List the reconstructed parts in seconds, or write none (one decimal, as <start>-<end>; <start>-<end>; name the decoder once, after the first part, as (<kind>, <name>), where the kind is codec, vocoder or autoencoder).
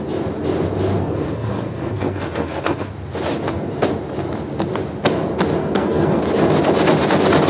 1.0-2.9 (codec, SNAC); 5.6-6.2